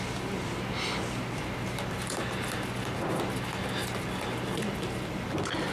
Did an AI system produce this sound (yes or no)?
no